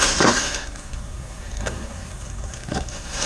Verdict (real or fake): fake